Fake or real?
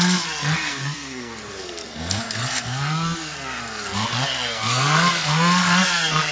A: fake